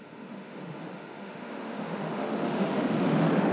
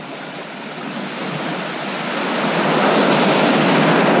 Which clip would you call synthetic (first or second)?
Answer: first